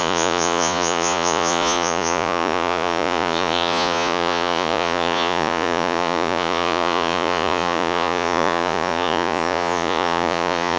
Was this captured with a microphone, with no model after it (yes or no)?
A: no